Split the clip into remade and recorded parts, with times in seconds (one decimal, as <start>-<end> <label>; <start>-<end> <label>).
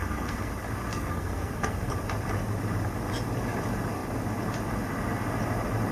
0.0-0.5 remade; 0.5-0.9 recorded; 0.9-1.9 remade; 1.9-5.9 recorded